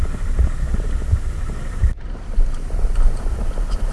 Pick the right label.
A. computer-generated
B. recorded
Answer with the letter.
B